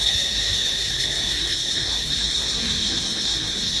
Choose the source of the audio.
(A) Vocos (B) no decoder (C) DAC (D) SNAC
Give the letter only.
D